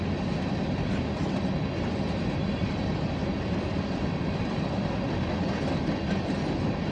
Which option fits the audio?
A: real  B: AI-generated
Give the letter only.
A